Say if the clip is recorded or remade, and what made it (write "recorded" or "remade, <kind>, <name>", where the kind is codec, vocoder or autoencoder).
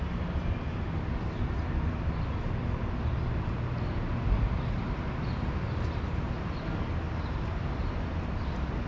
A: recorded